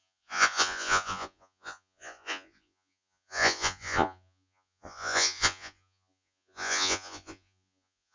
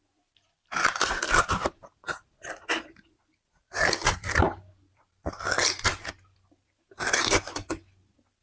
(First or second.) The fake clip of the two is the first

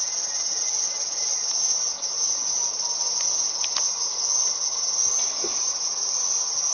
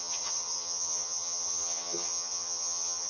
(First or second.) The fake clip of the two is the second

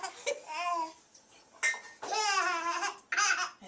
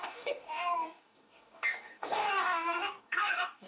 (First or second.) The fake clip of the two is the second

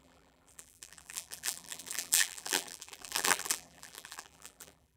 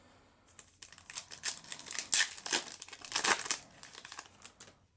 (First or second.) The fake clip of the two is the first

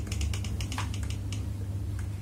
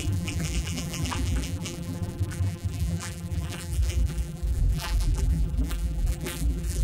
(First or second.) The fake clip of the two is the second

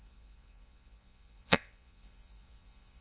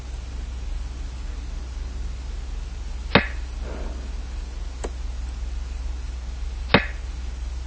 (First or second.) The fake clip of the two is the first